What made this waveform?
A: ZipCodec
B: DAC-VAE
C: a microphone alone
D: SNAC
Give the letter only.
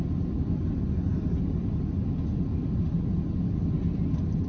C